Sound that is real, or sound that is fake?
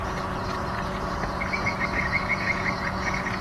fake